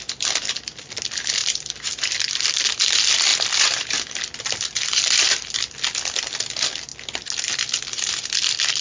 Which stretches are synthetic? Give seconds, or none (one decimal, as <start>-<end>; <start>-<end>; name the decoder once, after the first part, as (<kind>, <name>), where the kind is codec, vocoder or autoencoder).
1.4-2.3 (vocoder, BigVGAN v2); 3.3-5.5